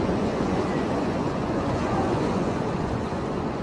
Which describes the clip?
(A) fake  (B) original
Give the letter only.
A